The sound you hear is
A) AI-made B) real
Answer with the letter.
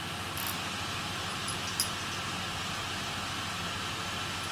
B